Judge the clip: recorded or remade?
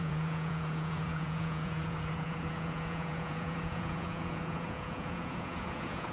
remade